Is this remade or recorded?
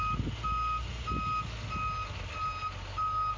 recorded